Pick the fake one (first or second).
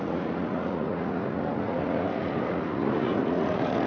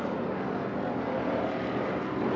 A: first